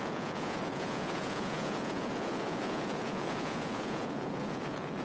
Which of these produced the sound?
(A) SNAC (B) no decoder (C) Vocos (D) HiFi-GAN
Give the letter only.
C